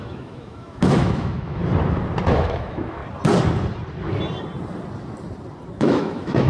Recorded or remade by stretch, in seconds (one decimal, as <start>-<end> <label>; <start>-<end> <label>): 0.0-1.6 remade; 1.6-2.3 recorded; 2.3-3.0 remade; 3.0-5.8 recorded; 5.8-6.5 remade